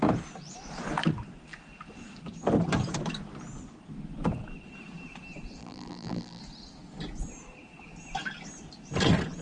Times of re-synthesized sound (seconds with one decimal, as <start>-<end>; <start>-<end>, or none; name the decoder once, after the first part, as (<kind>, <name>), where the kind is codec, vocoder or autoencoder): 5.6-6.4 (vocoder, BigVGAN v2)